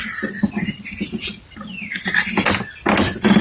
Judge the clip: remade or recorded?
recorded